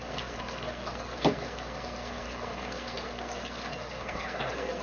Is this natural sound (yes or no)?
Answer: no